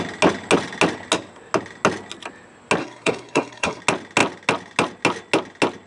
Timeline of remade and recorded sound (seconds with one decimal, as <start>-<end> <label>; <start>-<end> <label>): 0.0-2.8 recorded; 2.8-3.8 remade; 3.8-5.9 recorded